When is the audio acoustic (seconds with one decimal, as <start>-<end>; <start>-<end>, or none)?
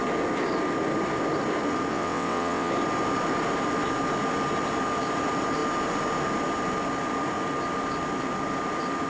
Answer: 0.0-1.9; 2.7-9.1